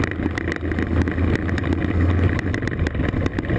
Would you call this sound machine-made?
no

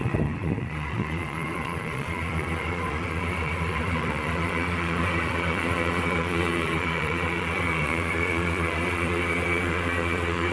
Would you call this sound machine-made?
yes